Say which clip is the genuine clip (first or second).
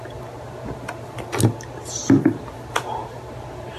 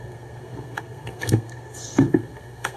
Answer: first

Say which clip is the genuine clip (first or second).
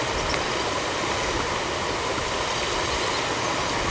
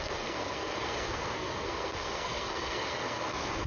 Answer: first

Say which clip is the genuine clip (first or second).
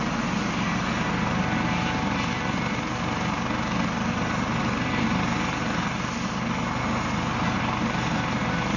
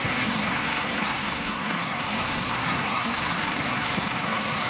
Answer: first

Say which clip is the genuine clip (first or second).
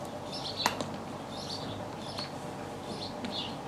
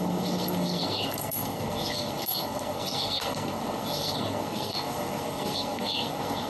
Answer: first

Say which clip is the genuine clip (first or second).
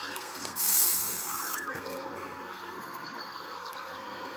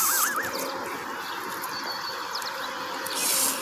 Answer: second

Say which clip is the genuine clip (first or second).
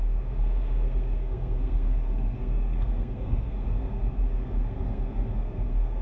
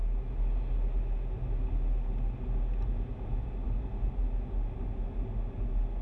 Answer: second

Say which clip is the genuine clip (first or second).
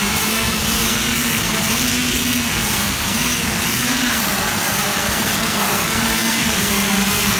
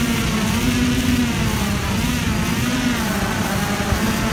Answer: second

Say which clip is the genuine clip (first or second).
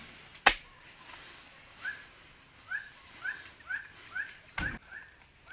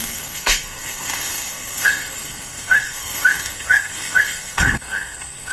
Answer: first